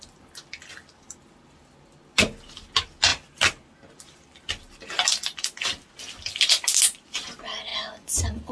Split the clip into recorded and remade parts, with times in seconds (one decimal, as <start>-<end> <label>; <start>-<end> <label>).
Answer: 0.0-7.7 recorded; 7.7-8.5 remade